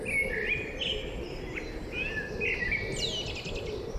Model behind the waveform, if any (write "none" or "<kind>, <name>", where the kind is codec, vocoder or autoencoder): none